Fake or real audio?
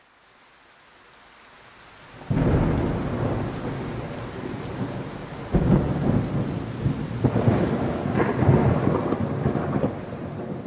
real